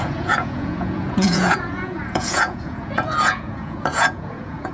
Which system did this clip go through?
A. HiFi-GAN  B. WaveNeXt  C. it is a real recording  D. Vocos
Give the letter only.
D